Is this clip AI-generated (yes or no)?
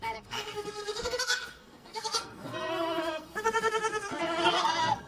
yes